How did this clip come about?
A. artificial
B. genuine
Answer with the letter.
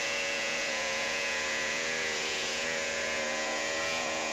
A